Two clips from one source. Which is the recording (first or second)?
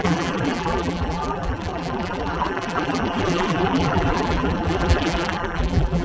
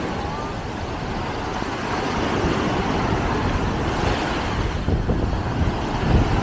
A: second